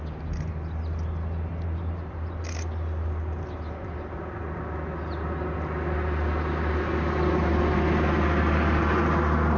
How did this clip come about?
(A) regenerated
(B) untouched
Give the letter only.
B